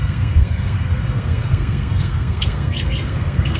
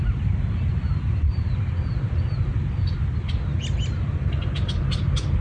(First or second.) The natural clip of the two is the second